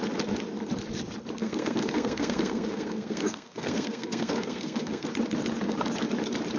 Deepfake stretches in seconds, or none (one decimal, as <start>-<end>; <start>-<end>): 1.4-5.1

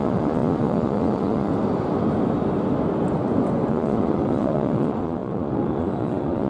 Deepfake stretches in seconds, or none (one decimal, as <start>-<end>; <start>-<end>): 0.0-1.5; 3.7-6.5

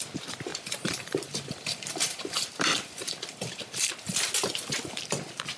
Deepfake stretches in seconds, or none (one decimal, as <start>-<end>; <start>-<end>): 0.5-3.9

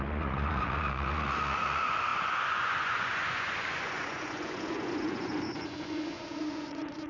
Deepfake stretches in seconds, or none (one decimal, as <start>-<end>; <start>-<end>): 0.0-7.1

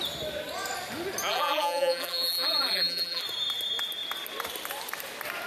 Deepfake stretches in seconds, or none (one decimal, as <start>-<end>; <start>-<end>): 1.3-3.2

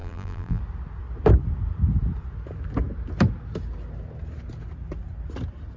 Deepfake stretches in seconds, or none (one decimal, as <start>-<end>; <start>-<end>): 0.0-0.6

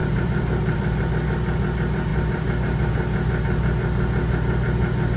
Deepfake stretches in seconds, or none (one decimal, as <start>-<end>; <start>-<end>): 0.0-1.1